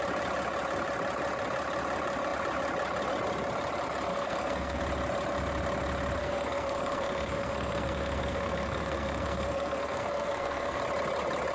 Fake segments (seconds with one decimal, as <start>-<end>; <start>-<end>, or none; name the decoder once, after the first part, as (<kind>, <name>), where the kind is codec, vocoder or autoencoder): 4.1-4.8 (codec, SNAC); 6.2-10.8